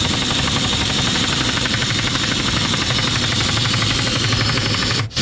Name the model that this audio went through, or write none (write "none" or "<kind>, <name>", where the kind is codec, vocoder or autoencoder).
vocoder, BigVGAN v2